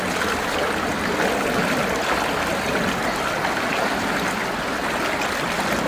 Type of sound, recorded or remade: recorded